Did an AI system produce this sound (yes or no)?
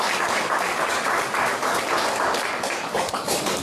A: yes